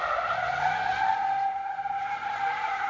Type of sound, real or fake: real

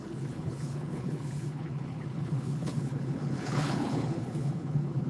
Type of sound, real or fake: fake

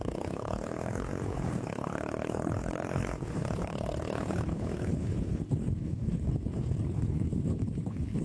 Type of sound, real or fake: fake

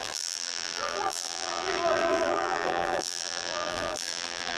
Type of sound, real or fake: fake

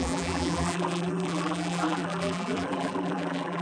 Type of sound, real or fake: fake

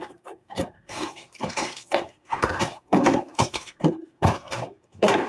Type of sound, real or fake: fake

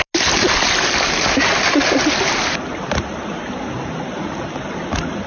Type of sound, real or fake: real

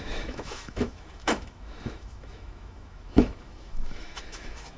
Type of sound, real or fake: fake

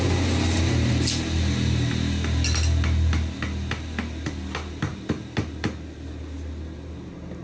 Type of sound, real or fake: real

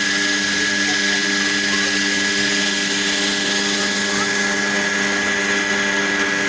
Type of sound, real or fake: real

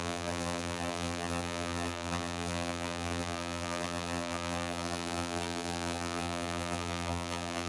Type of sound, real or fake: fake